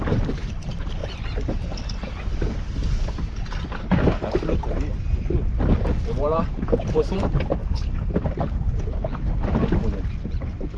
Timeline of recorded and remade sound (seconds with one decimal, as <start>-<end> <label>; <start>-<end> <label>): 0.0-1.0 remade; 1.0-6.0 recorded; 6.0-7.6 remade; 7.6-10.3 recorded; 10.3-10.8 remade